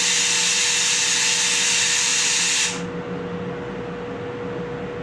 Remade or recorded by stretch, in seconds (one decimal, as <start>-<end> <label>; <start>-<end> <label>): 0.0-5.0 recorded